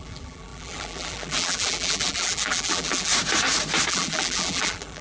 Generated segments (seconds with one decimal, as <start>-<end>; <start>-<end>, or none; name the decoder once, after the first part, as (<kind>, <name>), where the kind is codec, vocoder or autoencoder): 0.0-3.1 (vocoder, BigVGAN v2); 3.9-5.0

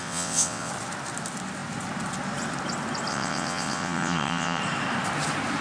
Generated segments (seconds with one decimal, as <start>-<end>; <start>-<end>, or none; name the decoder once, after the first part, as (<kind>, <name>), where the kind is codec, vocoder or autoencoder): 0.0-0.7 (vocoder, WaveNeXt); 3.1-4.6

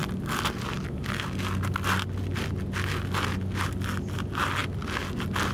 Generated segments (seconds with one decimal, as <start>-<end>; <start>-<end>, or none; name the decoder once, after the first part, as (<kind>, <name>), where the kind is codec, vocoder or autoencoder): none

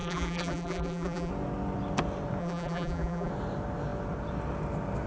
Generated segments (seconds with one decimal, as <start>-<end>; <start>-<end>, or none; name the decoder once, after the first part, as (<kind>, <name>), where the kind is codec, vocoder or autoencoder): 0.0-1.3 (vocoder, BigVGAN v2); 2.4-3.3

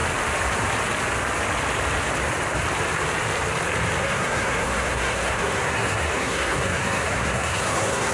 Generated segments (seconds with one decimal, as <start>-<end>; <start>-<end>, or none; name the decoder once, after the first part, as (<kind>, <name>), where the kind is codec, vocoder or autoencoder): 4.0-8.1 (codec, SNAC)

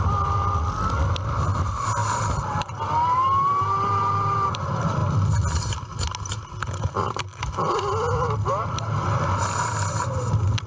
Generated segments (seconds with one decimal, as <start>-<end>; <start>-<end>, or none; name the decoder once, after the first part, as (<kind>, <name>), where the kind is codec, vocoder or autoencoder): none